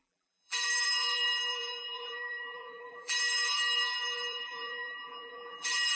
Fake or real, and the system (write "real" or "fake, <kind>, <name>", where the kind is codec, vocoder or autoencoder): fake, vocoder, BigVGAN v2